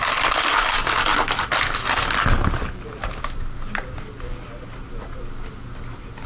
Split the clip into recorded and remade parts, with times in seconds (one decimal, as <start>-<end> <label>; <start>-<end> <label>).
0.0-6.3 recorded